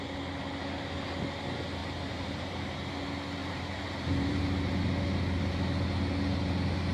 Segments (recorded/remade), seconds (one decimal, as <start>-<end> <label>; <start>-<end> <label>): 0.0-1.8 recorded; 1.8-2.9 remade; 2.9-3.4 recorded; 3.4-4.4 remade; 4.4-6.9 recorded